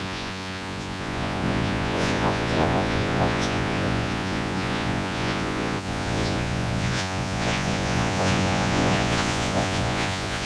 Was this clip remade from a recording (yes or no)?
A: yes